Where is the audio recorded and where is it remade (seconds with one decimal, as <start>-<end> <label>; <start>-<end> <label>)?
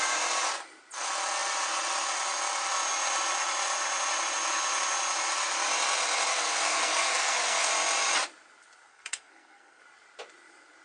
0.0-6.3 recorded; 6.3-7.7 remade; 7.7-8.9 recorded; 8.9-9.8 remade; 9.8-10.8 recorded